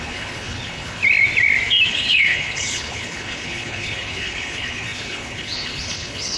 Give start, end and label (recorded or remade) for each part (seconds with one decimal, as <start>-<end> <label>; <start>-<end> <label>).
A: 0.0-1.0 remade; 1.0-1.9 recorded; 1.9-6.4 remade